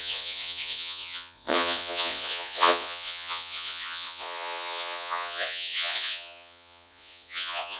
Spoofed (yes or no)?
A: yes